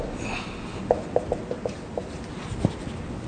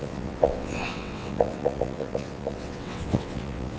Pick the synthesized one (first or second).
second